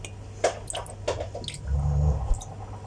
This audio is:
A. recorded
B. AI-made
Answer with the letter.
A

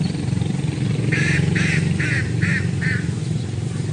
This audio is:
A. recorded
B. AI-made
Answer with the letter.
B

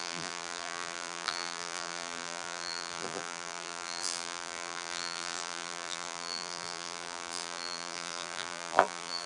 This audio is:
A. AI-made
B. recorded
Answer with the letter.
A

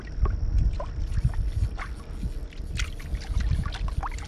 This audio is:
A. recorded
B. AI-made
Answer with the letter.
A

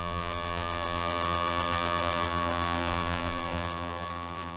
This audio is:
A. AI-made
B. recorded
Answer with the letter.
A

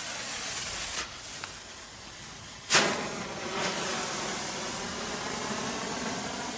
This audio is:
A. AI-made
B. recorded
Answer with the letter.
B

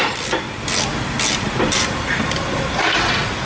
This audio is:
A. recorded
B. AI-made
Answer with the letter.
A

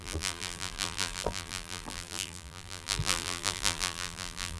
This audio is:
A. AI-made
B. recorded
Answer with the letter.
A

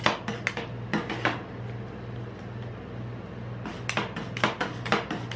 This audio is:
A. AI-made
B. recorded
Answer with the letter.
B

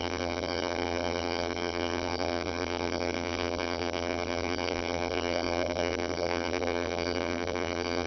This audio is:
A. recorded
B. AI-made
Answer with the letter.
B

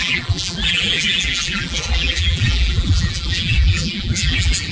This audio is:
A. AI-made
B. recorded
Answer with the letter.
A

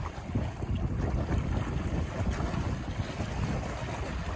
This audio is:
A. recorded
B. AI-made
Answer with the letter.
A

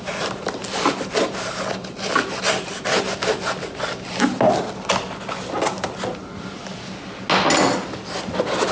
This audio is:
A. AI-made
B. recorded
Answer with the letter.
B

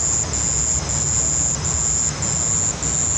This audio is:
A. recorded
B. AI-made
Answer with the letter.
A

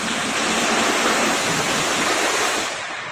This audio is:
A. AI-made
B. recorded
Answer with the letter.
A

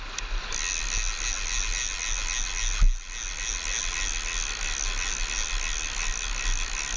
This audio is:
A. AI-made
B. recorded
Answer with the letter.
B